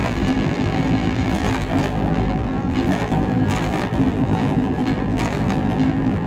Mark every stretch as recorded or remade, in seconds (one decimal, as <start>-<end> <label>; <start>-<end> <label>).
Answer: 0.0-6.3 remade